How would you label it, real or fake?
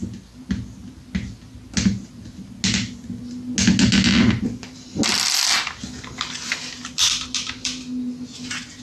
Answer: real